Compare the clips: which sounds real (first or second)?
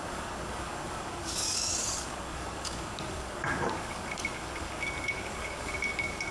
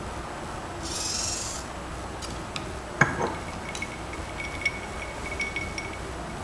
second